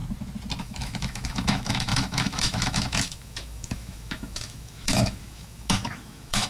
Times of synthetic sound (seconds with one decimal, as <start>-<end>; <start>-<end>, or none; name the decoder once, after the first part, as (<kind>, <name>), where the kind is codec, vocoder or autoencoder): 0.6-6.5 (autoencoder, DAC-VAE)